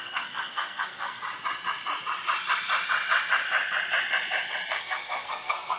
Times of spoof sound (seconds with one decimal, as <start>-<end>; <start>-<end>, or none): 0.0-1.2; 4.7-5.8